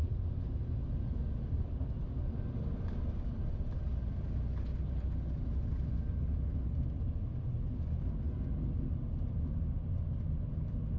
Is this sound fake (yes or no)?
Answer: no